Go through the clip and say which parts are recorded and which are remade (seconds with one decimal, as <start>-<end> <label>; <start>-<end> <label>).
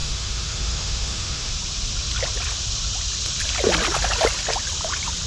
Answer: 0.0-1.5 remade; 1.5-5.3 recorded